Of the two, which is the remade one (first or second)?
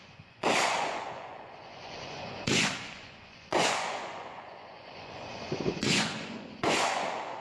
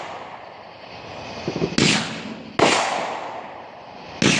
first